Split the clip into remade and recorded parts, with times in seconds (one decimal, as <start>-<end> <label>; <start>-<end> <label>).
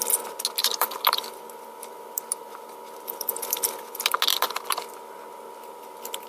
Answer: 0.0-0.6 recorded; 0.6-3.9 remade; 3.9-6.3 recorded